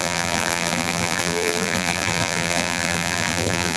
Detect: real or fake fake